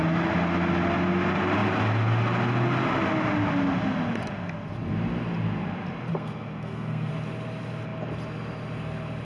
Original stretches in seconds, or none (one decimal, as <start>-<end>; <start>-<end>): 0.0-6.1; 7.1-9.2